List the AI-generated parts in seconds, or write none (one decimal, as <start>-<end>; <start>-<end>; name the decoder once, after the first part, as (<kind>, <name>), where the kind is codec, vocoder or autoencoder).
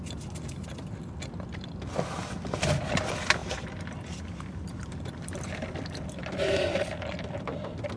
3.4-6.2 (vocoder, BigVGAN v2)